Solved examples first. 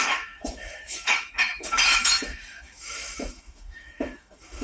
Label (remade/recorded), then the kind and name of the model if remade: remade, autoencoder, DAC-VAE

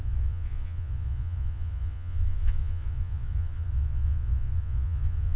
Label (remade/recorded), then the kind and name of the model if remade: remade, vocoder, Vocos